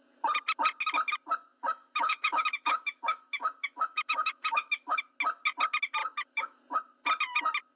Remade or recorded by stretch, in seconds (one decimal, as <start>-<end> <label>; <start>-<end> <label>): 0.0-1.5 recorded; 1.5-5.0 remade; 5.0-6.0 recorded; 6.0-6.6 remade; 6.6-7.8 recorded